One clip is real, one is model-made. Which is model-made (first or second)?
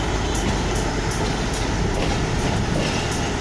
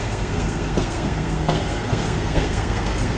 second